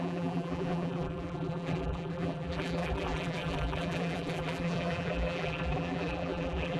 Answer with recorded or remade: remade